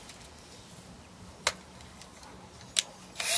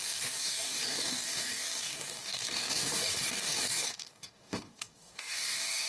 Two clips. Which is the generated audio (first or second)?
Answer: second